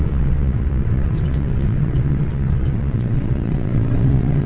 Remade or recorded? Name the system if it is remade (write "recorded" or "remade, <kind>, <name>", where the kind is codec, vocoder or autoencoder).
remade, vocoder, WaveNeXt